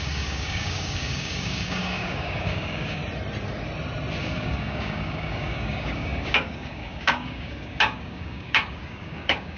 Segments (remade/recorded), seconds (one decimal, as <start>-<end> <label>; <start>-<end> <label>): 0.0-3.0 remade; 3.0-4.2 recorded; 4.2-9.6 remade